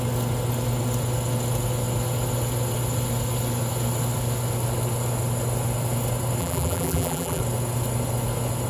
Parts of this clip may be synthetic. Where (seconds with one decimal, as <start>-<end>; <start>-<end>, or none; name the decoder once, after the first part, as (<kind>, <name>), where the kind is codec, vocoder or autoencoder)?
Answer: 6.4-7.4 (vocoder, BigVGAN v2)